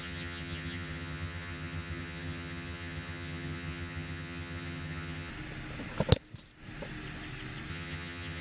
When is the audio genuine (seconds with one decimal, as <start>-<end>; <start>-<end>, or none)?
5.3-7.7